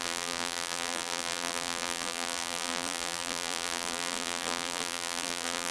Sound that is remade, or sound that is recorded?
remade